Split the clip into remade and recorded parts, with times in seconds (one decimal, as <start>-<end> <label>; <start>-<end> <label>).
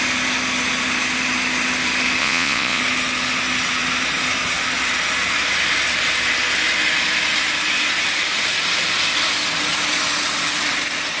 0.0-2.2 recorded; 2.2-2.8 remade; 2.8-11.2 recorded